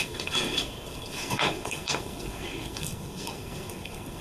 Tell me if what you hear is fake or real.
fake